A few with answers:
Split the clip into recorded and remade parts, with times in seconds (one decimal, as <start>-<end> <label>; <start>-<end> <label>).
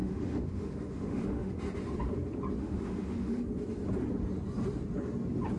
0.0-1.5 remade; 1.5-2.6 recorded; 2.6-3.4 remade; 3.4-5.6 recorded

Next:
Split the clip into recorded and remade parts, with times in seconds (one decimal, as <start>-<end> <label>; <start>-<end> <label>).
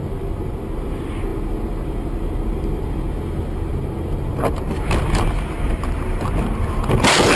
0.0-7.4 recorded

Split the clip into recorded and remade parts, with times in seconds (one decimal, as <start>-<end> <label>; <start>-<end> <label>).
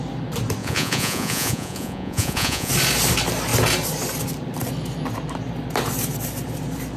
0.0-0.6 recorded; 0.6-2.7 remade; 2.7-7.0 recorded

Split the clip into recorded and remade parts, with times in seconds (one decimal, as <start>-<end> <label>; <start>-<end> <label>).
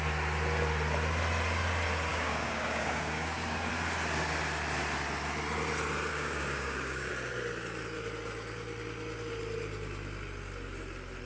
0.0-2.1 recorded; 2.1-3.7 remade; 3.7-6.1 recorded; 6.1-7.1 remade; 7.1-11.3 recorded